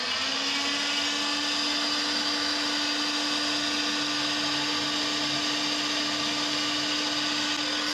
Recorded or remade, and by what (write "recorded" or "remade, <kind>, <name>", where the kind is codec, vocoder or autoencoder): recorded